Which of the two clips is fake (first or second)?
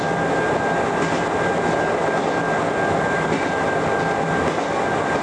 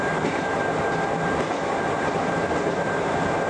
second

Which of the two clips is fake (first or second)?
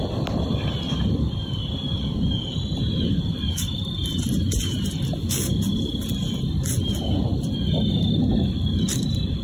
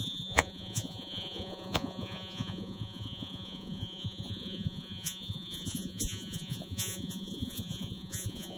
second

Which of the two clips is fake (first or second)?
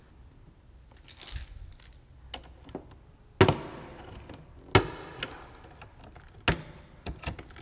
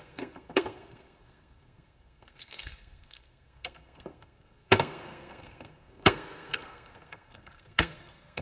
second